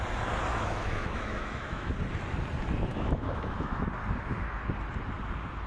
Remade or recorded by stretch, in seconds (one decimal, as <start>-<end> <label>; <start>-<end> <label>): 0.0-0.5 recorded; 0.5-1.9 remade; 1.9-2.9 recorded; 2.9-3.9 remade; 3.9-5.7 recorded